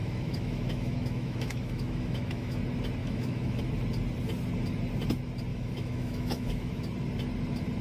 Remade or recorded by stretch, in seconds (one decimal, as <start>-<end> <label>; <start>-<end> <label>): 0.0-2.6 remade; 2.6-3.0 recorded; 3.0-3.6 remade; 3.6-5.5 recorded; 5.5-6.8 remade; 6.8-7.8 recorded